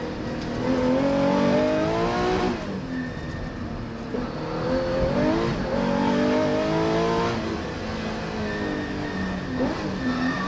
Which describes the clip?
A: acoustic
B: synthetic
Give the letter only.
A